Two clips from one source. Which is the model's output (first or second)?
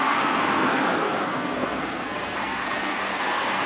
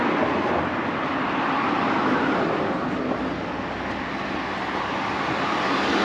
first